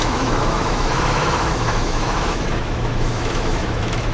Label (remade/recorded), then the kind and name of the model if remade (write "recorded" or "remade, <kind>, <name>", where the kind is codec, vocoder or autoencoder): remade, autoencoder, DAC-VAE